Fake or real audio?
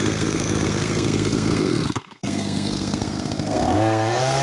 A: fake